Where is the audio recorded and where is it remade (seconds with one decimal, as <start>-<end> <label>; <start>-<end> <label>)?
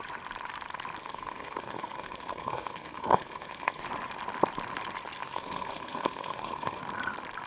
0.0-1.0 recorded; 1.0-3.8 remade; 3.8-5.2 recorded; 5.2-6.8 remade; 6.8-7.5 recorded